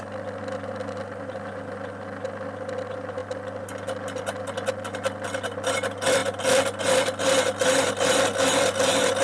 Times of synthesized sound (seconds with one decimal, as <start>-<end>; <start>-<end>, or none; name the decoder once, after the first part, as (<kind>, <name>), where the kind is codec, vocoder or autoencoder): none